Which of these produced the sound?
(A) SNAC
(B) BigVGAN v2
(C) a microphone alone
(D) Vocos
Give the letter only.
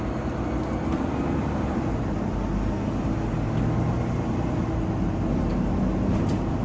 C